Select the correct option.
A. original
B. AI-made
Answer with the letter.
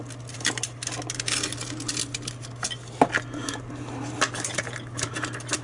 A